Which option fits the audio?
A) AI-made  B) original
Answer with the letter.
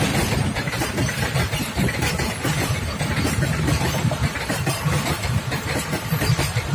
A